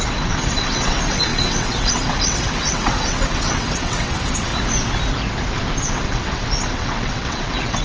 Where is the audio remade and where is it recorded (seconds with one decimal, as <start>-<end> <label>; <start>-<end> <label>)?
0.0-4.5 remade; 4.5-5.8 recorded; 5.8-7.8 remade